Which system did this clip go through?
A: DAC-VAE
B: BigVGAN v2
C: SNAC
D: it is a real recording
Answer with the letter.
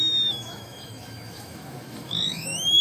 A